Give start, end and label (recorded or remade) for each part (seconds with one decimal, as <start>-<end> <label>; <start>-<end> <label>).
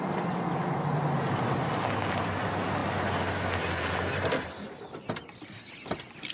0.0-6.3 recorded